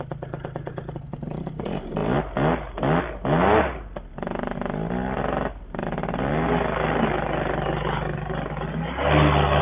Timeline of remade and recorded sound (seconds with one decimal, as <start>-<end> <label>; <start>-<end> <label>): 0.0-9.6 recorded